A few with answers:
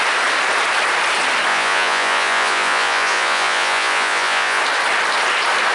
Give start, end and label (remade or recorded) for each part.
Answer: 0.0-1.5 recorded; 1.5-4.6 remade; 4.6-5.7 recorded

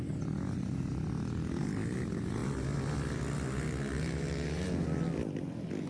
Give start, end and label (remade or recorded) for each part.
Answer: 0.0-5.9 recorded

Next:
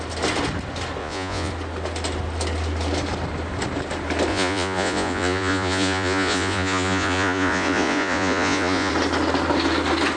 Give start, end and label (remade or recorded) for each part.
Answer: 0.0-1.0 recorded; 1.0-1.5 remade; 1.5-4.3 recorded; 4.3-8.9 remade; 8.9-10.2 recorded